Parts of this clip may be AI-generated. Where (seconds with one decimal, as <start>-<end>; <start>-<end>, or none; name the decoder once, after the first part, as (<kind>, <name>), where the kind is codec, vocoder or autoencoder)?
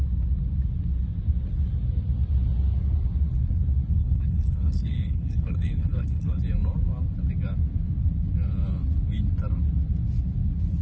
4.0-6.4 (codec, HILCodec)